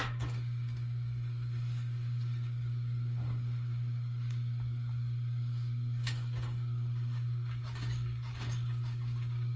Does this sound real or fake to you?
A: fake